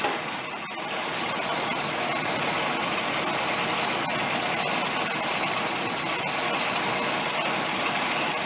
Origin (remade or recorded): recorded